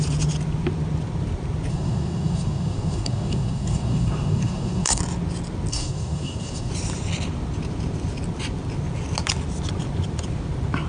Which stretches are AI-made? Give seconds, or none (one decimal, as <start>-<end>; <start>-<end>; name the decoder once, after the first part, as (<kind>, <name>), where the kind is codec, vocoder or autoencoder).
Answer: 1.7-5.0 (codec, SNAC); 5.7-6.7